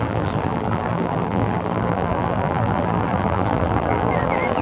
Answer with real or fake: fake